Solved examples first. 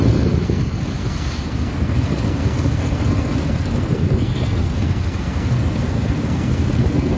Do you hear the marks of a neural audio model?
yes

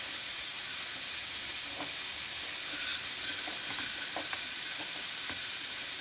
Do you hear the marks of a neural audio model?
no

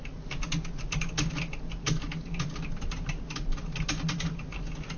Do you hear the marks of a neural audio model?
no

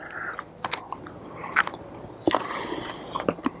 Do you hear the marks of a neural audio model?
yes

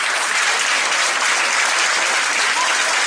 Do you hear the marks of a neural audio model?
no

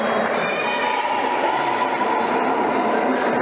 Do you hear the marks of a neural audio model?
no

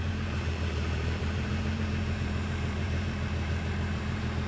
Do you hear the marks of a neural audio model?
yes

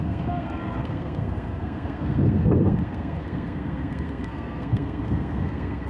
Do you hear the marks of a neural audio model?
yes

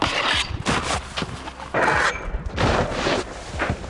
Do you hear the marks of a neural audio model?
no